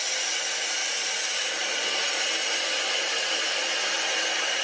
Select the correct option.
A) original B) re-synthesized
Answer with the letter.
A